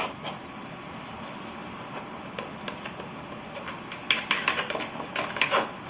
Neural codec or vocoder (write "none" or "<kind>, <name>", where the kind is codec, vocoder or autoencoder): none